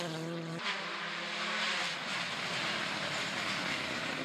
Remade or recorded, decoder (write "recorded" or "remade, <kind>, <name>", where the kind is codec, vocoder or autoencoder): recorded